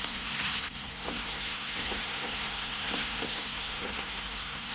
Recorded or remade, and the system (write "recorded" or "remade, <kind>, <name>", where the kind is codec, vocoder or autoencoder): remade, codec, SNAC